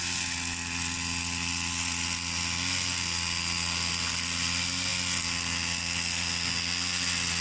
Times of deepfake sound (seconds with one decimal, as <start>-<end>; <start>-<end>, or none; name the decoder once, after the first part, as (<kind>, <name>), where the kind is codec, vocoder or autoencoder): none